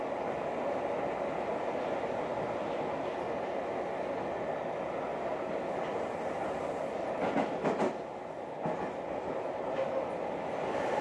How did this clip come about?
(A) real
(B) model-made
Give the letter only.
A